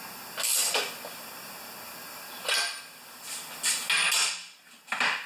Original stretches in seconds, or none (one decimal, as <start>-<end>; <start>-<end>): 0.0-5.3